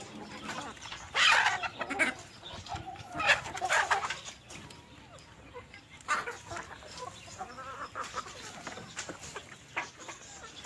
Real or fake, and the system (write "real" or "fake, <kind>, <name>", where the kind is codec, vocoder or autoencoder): fake, vocoder, BigVGAN v2